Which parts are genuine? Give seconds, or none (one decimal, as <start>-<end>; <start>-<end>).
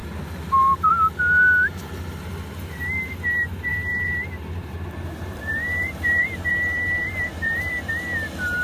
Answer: 0.0-3.7; 7.9-8.6